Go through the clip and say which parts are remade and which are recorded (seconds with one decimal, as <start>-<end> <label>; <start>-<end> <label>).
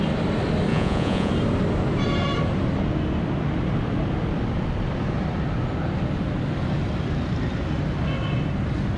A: 0.0-0.7 recorded; 0.7-1.3 remade; 1.3-9.0 recorded